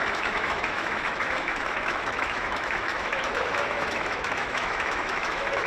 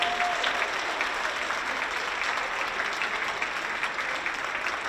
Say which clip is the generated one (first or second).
first